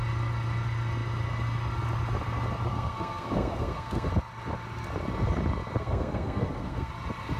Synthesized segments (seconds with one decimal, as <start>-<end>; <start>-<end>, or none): 2.7-4.1; 5.8-6.9